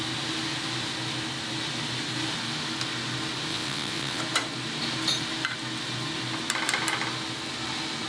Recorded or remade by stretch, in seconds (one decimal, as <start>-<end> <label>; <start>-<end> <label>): 0.0-3.5 recorded; 3.5-4.2 remade; 4.2-8.1 recorded